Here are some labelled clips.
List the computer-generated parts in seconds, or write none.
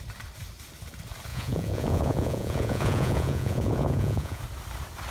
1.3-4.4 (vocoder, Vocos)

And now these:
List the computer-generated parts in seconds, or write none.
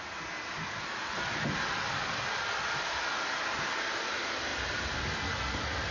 none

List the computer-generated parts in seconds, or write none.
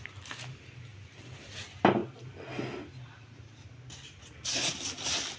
none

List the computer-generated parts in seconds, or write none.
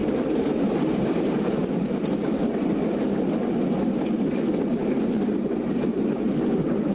none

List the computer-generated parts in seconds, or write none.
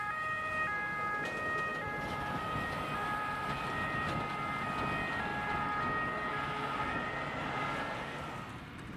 1.7-4.2 (vocoder, BigVGAN v2)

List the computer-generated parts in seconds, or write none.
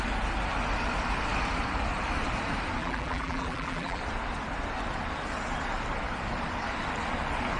2.8-4.0 (vocoder, BigVGAN v2)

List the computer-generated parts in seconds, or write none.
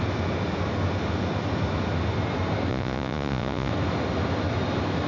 2.7-3.7 (vocoder, Vocos)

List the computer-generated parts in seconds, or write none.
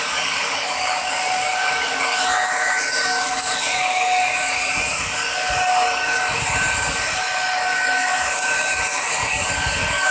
0.0-6.2 (codec, DAC); 6.8-10.1